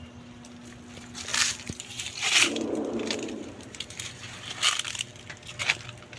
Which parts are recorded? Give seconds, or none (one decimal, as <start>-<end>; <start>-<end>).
0.0-1.3; 3.8-6.2